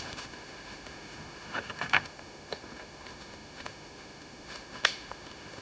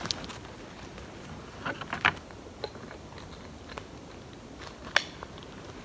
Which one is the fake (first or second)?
first